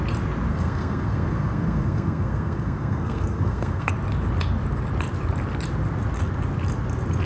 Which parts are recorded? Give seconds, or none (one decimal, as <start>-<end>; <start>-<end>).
0.0-0.5; 3.9-7.3